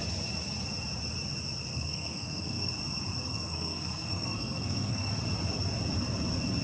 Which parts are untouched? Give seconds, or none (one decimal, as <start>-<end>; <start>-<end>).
0.0-1.7; 2.7-3.3; 5.1-6.6